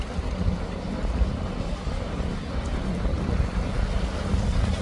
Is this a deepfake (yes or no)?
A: no